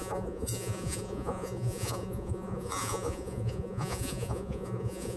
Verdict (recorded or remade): remade